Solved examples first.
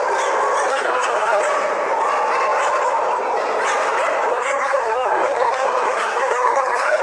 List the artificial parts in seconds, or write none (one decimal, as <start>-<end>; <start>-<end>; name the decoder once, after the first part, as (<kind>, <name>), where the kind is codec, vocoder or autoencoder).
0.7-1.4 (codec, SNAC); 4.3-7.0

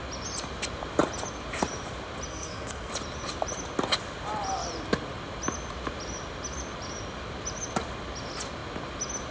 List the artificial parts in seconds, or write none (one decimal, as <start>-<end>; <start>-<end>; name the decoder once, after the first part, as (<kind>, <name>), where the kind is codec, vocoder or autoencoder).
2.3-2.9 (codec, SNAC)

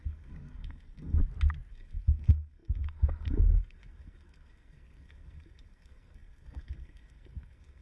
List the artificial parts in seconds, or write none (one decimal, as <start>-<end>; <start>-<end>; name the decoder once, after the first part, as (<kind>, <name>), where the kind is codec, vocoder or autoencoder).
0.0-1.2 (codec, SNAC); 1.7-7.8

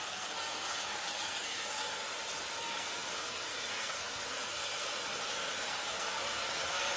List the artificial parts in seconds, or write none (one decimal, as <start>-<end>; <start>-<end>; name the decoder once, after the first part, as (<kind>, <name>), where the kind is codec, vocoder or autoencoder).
0.0-2.0 (codec, SNAC); 2.6-7.0

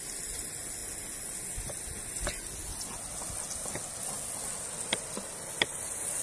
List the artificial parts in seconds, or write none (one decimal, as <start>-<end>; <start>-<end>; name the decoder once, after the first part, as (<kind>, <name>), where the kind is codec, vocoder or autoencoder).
none

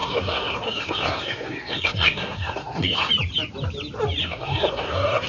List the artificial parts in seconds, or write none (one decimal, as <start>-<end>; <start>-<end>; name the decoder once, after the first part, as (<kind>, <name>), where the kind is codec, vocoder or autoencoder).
0.0-3.1 (codec, SNAC); 4.2-5.3